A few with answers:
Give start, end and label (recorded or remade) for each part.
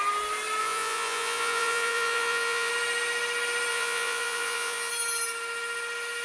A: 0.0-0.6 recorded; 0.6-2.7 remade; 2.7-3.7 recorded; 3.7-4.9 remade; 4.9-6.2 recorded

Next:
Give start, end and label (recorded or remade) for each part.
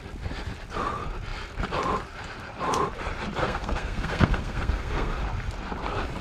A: 0.0-3.4 recorded; 3.4-5.1 remade; 5.1-6.2 recorded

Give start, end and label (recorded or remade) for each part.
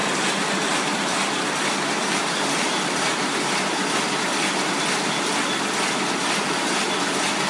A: 0.0-7.5 recorded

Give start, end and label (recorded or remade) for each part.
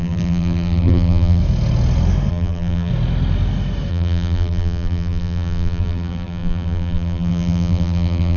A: 0.0-1.4 remade; 1.4-2.3 recorded; 2.3-2.9 remade; 2.9-3.9 recorded; 3.9-8.4 remade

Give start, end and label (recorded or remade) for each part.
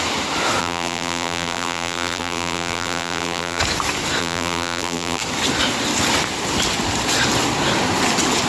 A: 0.0-0.6 recorded; 0.6-3.6 remade; 3.6-4.2 recorded; 4.2-5.2 remade; 5.2-8.5 recorded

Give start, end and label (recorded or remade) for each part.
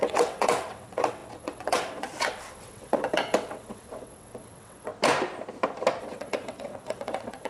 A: 0.0-4.9 remade; 4.9-6.0 recorded; 6.0-7.5 remade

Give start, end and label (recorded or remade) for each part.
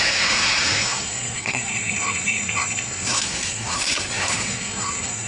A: 0.0-5.3 remade